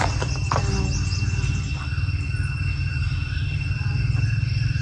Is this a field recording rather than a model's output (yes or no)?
yes